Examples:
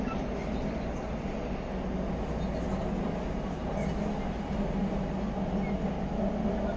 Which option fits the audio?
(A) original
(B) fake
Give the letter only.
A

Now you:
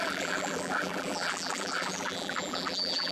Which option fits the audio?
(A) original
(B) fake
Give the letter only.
B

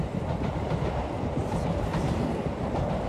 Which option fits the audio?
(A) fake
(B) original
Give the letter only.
B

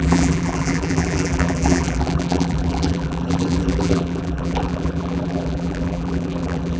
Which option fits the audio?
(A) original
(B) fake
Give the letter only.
B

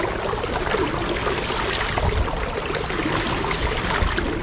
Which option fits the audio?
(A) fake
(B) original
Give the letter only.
B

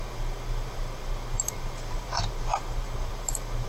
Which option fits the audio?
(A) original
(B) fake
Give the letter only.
B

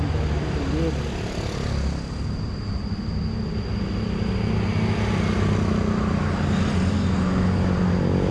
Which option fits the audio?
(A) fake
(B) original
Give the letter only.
B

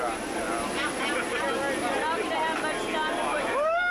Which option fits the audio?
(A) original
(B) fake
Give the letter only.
A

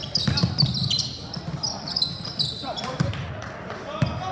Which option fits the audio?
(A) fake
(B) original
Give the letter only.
A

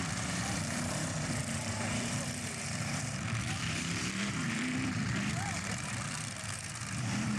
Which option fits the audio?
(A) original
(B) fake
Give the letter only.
B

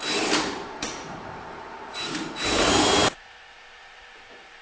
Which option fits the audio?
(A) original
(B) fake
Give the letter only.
B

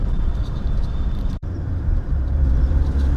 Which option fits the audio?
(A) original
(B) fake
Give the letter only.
B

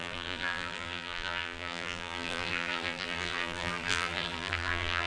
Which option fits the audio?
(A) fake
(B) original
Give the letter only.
A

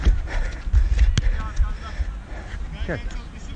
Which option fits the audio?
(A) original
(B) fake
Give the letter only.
A